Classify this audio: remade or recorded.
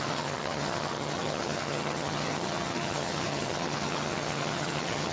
remade